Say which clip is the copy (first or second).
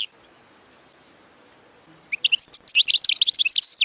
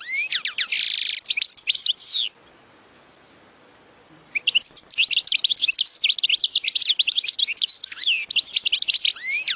second